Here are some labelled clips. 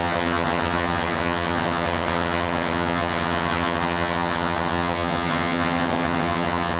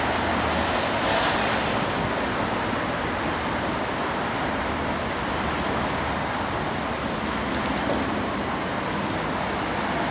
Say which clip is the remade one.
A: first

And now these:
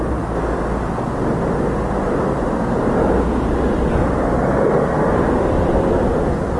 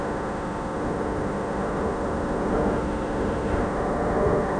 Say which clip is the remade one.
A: second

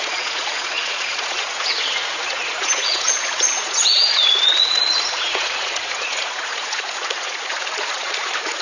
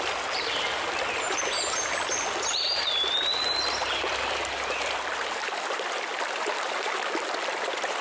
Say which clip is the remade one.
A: first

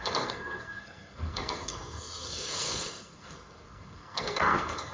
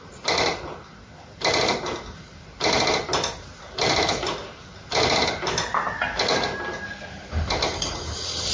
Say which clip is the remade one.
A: first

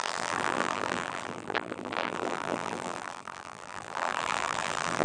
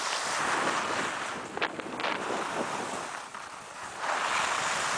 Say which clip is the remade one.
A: first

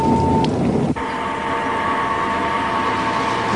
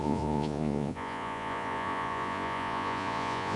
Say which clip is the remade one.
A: second